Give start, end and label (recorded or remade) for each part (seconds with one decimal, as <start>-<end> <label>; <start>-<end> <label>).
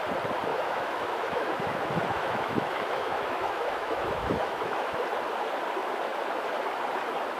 0.0-0.5 recorded; 0.5-4.9 remade; 4.9-7.4 recorded